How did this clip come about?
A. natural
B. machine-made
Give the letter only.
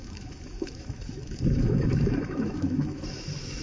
B